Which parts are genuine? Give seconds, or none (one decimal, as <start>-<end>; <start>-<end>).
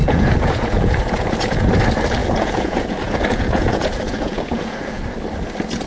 1.7-2.2; 5.0-5.9